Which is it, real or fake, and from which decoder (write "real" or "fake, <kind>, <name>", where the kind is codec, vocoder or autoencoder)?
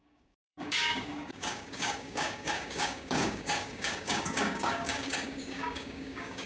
fake, codec, DAC